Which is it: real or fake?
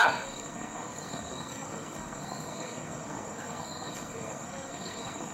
fake